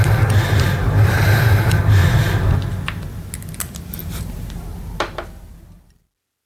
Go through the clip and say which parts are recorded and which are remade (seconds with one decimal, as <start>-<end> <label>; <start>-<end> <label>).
0.0-2.0 recorded; 2.0-2.5 remade; 2.5-4.0 recorded; 4.0-5.0 remade; 5.0-6.5 recorded